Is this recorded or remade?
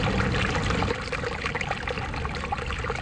recorded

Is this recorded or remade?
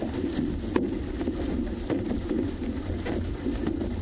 recorded